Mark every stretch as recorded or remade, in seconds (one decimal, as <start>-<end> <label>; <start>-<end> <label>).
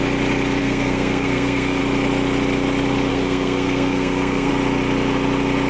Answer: 0.0-0.6 recorded; 0.6-1.8 remade; 1.8-3.1 recorded; 3.1-4.5 remade; 4.5-5.7 recorded